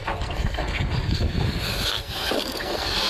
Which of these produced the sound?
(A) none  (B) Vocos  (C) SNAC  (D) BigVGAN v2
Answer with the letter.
C